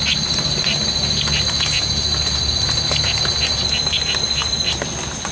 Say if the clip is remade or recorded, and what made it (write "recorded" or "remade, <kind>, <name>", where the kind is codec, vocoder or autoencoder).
recorded